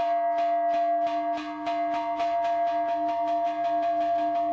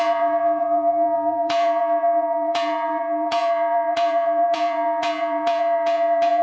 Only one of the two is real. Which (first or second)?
first